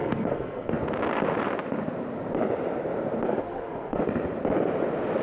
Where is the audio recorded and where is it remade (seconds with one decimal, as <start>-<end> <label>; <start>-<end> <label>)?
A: 0.0-0.7 remade; 0.7-3.4 recorded; 3.4-4.0 remade; 4.0-5.2 recorded